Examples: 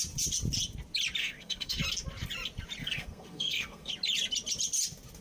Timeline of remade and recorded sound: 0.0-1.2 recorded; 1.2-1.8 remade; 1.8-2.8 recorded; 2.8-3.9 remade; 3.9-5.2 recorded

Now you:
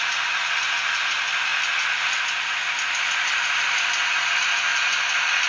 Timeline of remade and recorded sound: 0.0-5.5 recorded

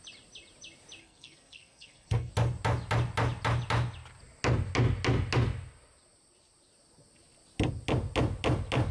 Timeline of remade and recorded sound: 0.0-1.0 recorded; 1.0-2.3 remade; 2.3-8.9 recorded

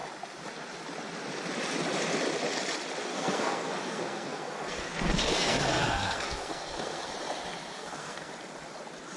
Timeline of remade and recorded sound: 0.0-3.1 recorded; 3.1-7.1 remade; 7.1-7.7 recorded; 7.7-8.3 remade; 8.3-9.2 recorded

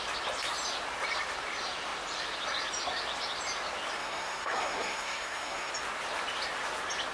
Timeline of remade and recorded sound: 0.0-4.0 recorded; 4.0-5.7 remade; 5.7-7.1 recorded

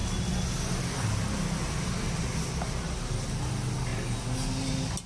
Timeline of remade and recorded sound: 0.0-5.1 recorded

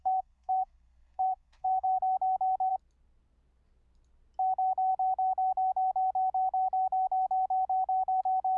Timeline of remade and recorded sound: 0.0-2.0 remade; 2.0-8.6 recorded